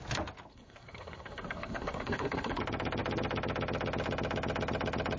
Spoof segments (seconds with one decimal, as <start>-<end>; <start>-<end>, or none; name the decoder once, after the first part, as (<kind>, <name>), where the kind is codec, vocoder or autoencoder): 0.5-2.6 (codec, SNAC)